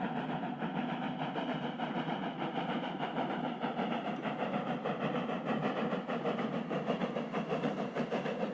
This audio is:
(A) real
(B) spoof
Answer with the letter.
B